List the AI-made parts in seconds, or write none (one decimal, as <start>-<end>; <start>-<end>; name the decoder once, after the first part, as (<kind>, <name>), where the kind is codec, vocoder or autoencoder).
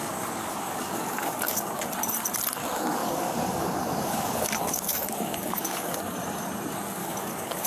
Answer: 0.0-1.9 (codec, DAC); 3.0-6.0; 7.0-7.7